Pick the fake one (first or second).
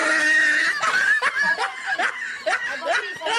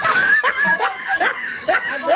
second